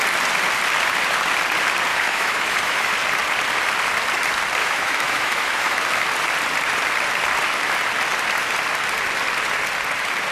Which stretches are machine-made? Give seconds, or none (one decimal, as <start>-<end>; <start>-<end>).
1.9-2.9; 4.6-5.8